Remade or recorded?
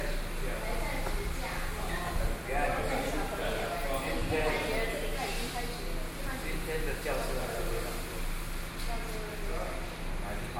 recorded